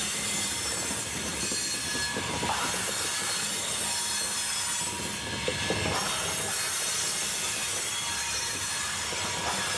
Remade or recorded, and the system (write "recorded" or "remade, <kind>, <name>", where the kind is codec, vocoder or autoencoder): recorded